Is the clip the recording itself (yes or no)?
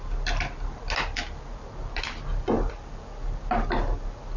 yes